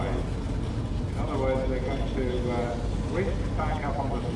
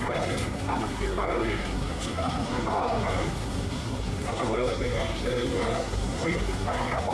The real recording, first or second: first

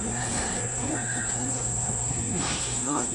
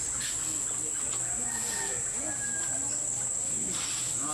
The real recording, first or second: second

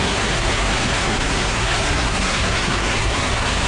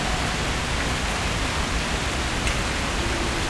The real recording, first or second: second